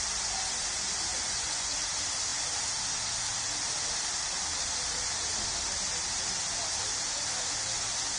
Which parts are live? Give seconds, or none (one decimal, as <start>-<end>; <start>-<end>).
0.0-1.1; 1.7-8.2